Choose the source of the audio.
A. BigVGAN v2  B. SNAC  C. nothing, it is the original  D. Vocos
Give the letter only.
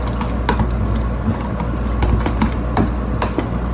C